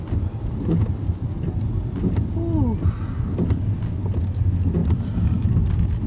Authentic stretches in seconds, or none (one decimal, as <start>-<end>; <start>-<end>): 0.0-4.8; 5.6-6.1